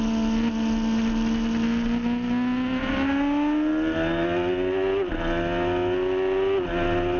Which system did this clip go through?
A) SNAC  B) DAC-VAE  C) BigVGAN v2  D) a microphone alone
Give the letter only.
D